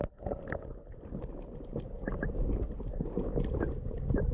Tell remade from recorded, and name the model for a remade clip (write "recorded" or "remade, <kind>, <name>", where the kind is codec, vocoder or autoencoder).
recorded